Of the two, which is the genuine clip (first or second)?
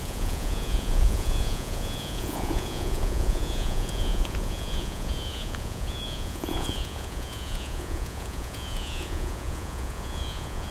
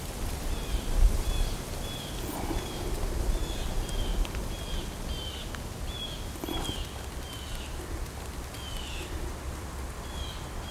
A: second